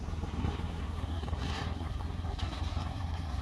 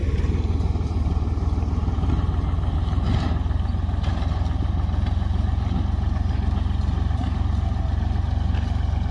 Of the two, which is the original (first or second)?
second